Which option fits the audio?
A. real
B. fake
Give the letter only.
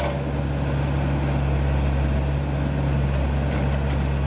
A